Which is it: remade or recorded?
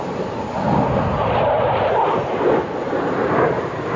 recorded